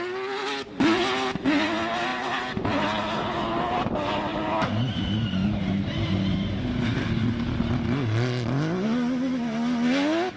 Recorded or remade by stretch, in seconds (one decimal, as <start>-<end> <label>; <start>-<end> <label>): 0.0-10.4 recorded